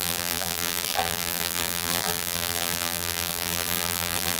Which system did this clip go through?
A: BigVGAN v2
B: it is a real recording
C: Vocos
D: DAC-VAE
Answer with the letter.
A